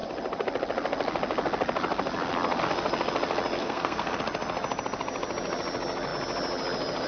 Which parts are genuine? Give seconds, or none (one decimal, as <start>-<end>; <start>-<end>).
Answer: 0.0-3.6; 4.2-7.1